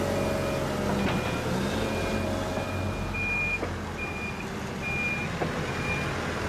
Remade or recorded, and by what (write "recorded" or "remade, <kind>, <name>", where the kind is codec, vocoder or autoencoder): recorded